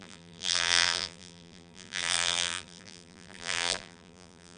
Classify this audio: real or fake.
fake